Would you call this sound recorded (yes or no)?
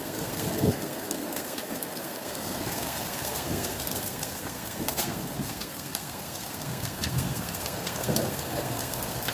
no